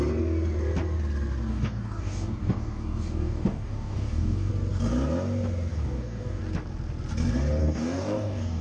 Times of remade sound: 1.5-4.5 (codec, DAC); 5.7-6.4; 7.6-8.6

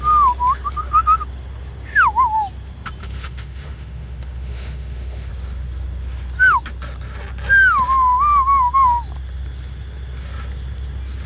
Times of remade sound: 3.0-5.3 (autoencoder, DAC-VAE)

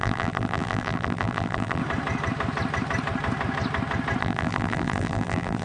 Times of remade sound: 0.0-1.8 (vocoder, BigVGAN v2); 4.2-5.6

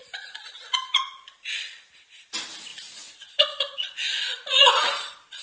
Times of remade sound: 0.0-1.7 (vocoder, Vocos); 2.7-5.4